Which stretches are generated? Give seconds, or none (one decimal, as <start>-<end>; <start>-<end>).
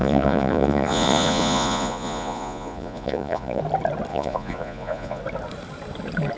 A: 0.0-3.6; 4.1-5.2